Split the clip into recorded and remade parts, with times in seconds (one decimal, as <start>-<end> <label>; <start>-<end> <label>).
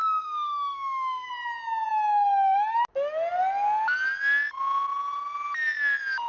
0.0-1.3 remade; 1.3-6.3 recorded